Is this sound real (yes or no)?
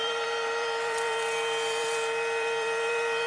no